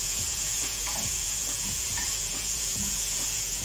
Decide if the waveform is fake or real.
fake